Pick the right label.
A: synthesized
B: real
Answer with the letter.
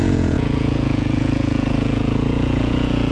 A